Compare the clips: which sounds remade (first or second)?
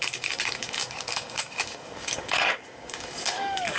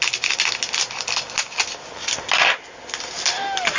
first